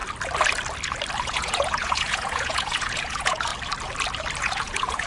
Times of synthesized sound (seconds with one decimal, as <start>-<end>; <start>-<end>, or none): 1.2-3.5; 4.4-5.1